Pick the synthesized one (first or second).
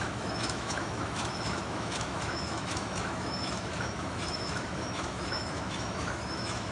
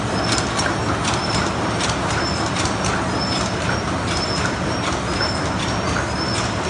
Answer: first